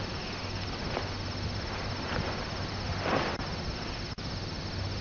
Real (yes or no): yes